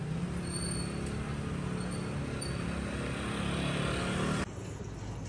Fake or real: real